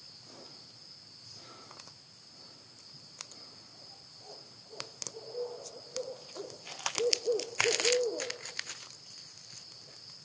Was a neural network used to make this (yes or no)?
no